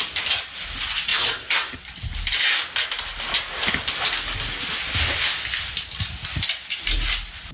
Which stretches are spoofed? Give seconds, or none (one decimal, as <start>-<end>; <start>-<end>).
none